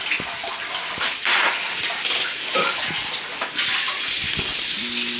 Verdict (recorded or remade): recorded